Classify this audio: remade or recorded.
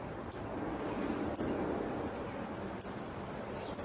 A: recorded